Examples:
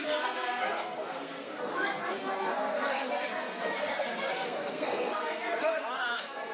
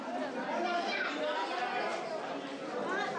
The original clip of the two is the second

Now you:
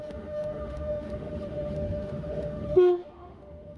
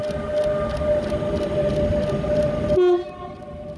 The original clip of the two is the second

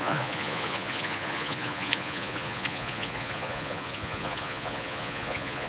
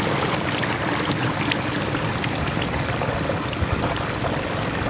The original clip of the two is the second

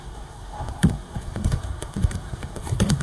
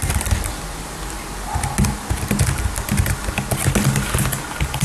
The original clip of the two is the second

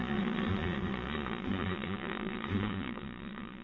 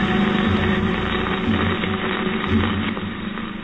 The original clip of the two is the second